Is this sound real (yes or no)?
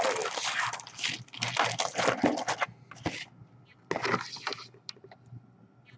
yes